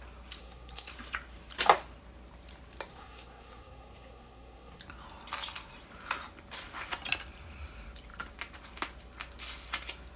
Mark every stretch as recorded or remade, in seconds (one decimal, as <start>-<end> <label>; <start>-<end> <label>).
0.0-0.4 recorded; 0.4-0.9 remade; 0.9-2.9 recorded; 2.9-4.8 remade; 4.8-10.2 recorded